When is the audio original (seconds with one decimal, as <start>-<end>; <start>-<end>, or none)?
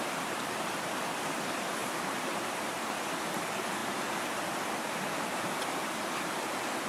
0.0-1.8; 3.1-6.9